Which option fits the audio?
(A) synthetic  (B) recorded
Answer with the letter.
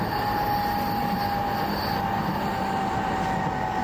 B